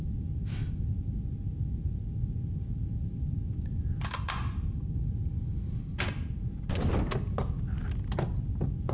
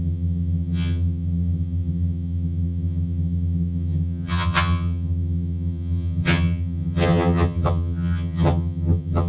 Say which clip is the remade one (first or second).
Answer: second